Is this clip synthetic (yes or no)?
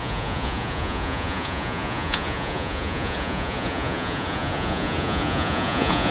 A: yes